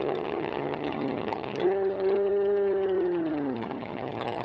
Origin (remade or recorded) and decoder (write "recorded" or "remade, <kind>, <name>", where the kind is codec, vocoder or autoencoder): remade, vocoder, HiFi-GAN